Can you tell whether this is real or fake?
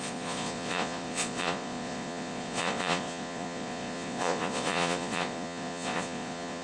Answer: fake